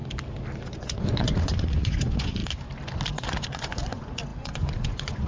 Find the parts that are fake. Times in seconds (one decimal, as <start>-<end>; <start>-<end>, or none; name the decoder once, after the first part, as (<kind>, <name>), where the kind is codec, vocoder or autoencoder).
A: 0.6-2.4 (vocoder, Vocos); 3.1-5.3